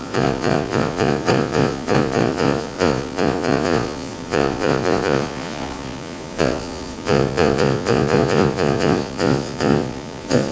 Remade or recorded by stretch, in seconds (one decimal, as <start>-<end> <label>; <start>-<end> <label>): 0.0-10.5 remade